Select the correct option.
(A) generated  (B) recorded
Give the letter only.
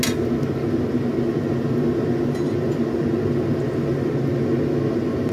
B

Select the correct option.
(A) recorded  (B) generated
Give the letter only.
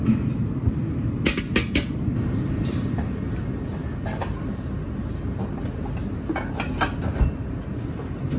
A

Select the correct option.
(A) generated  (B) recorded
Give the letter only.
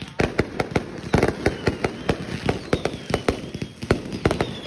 B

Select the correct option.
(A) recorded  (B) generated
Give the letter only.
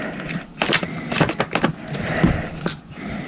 A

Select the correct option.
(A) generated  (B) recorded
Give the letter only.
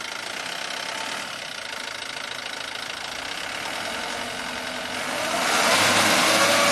B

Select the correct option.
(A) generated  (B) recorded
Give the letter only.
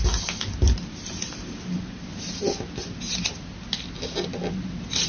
B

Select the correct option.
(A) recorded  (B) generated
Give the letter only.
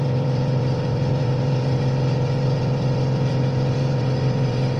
B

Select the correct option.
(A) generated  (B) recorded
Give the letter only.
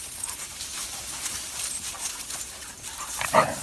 A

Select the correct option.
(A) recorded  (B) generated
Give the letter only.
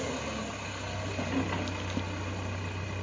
A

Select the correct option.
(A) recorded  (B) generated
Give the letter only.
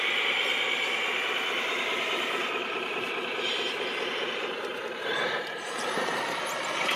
B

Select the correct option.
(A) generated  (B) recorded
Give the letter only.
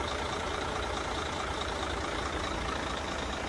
A